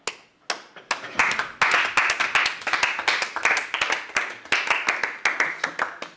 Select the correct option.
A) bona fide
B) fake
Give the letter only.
A